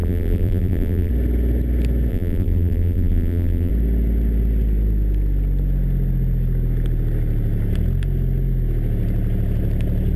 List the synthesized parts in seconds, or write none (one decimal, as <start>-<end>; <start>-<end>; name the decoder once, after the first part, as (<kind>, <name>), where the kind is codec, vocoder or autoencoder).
0.0-1.1 (vocoder, BigVGAN v2); 2.1-3.7

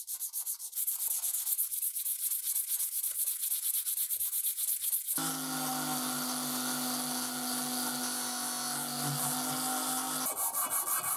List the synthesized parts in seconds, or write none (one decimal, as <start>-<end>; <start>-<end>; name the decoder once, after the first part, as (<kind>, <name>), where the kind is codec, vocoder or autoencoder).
0.4-1.1 (vocoder, BigVGAN v2); 2.1-4.1